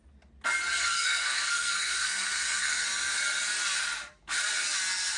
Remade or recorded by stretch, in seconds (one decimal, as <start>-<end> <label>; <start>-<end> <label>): 0.0-0.8 recorded; 0.8-2.8 remade; 2.8-5.2 recorded